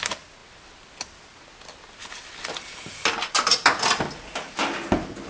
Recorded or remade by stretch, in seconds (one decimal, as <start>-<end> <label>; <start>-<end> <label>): 0.0-5.3 recorded